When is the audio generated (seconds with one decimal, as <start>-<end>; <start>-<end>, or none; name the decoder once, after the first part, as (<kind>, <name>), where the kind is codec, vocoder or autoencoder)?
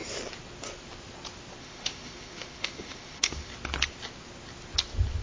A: 1.6-3.5 (autoencoder, DAC-VAE)